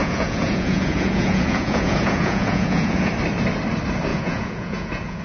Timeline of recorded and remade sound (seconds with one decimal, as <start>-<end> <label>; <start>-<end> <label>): 0.0-3.1 remade; 3.1-4.1 recorded; 4.1-5.2 remade